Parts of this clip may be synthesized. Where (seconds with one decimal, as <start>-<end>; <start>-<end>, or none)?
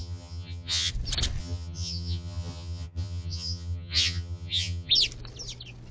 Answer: 0.0-0.9; 1.4-4.9